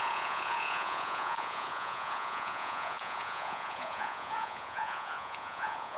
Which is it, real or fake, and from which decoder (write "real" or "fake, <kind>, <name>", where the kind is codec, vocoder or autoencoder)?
fake, vocoder, Vocos